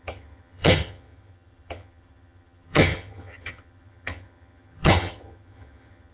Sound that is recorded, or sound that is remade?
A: remade